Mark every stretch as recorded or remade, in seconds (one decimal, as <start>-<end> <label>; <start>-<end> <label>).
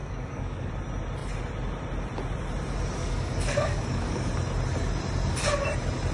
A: 0.0-0.7 remade; 0.7-3.0 recorded; 3.0-4.3 remade; 4.3-6.1 recorded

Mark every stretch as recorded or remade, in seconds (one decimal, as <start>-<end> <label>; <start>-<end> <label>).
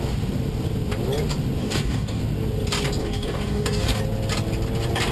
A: 0.0-1.6 recorded; 1.6-2.2 remade; 2.2-3.0 recorded; 3.0-4.0 remade; 4.0-5.1 recorded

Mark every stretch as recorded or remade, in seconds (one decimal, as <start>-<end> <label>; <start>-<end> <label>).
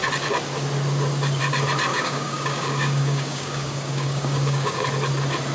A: 0.0-1.9 recorded; 1.9-4.8 remade; 4.8-5.5 recorded